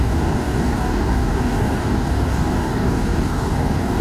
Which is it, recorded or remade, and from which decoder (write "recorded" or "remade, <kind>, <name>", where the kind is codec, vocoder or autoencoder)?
remade, codec, DAC